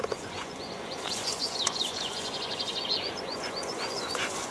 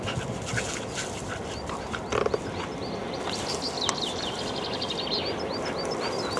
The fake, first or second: first